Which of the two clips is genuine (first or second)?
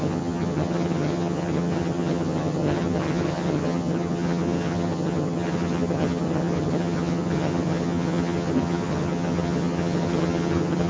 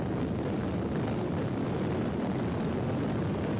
second